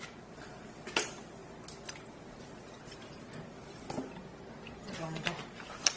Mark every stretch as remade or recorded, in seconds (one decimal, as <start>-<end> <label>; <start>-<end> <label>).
0.0-6.0 recorded